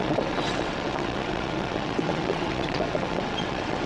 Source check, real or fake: fake